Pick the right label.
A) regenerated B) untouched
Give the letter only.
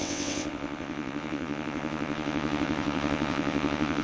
A